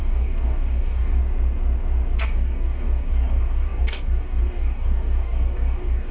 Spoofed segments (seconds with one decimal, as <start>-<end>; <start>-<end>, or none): 0.0-1.2; 2.2-6.1